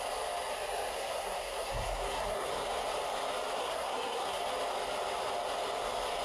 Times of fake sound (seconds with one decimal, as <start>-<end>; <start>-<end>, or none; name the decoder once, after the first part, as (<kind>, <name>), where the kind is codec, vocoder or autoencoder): 0.9-2.5 (codec, SNAC); 3.6-4.4